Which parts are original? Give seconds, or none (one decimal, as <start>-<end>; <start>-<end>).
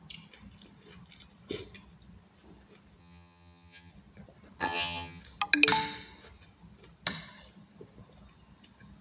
0.0-3.0; 3.9-4.6; 5.2-9.0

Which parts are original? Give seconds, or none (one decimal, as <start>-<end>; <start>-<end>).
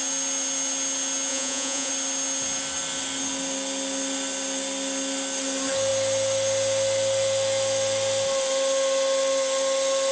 0.0-1.3; 1.9-10.1